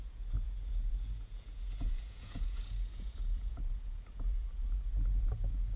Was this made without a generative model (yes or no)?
no